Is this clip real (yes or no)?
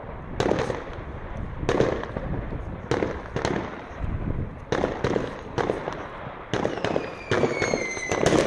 yes